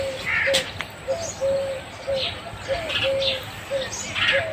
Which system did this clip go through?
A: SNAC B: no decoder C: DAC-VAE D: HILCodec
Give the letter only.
B